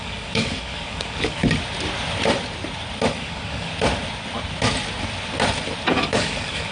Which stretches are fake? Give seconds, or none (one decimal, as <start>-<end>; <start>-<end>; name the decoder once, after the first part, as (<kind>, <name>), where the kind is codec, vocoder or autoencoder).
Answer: 0.0-1.4 (codec, DAC); 3.1-3.7; 5.9-6.7